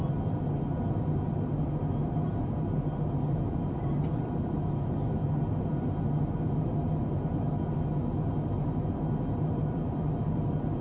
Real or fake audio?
real